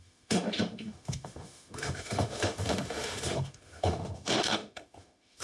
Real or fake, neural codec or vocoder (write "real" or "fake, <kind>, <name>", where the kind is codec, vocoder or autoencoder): fake, autoencoder, DAC-VAE